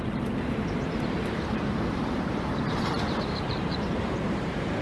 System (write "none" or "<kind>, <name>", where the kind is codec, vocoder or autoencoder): vocoder, BigVGAN v2